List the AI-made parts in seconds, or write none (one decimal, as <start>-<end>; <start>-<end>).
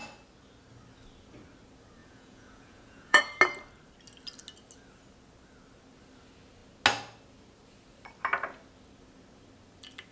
2.0-3.2